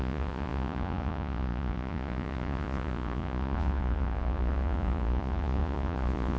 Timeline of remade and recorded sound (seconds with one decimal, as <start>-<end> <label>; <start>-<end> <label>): 0.0-6.4 remade